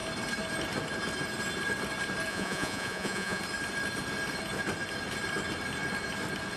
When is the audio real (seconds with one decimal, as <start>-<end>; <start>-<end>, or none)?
0.0-2.3; 3.4-6.6